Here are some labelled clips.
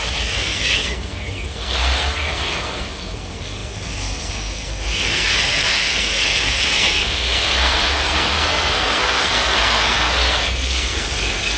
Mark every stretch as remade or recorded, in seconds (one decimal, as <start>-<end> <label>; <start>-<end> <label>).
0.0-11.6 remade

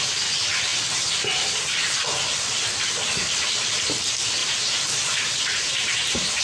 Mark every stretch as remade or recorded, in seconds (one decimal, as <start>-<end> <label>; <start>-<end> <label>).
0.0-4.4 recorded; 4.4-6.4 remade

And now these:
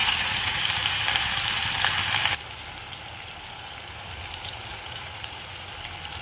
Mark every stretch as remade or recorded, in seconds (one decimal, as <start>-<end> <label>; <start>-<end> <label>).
0.0-0.6 remade; 0.6-4.7 recorded; 4.7-5.7 remade; 5.7-6.2 recorded

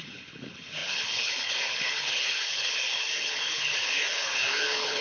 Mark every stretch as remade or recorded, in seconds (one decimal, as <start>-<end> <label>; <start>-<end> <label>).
0.0-5.0 remade

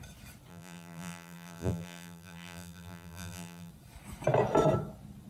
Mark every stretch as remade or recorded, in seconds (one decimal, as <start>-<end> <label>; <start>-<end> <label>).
0.0-0.5 recorded; 0.5-3.7 remade; 3.7-5.3 recorded